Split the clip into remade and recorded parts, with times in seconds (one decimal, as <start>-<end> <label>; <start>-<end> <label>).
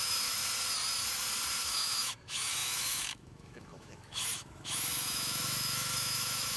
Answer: 0.0-0.4 remade; 0.4-1.6 recorded; 1.6-6.6 remade